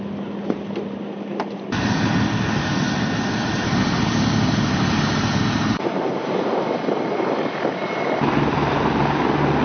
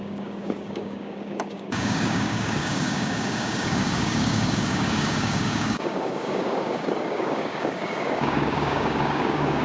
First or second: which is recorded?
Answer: first